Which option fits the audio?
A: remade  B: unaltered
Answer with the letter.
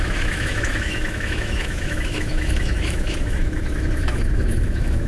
A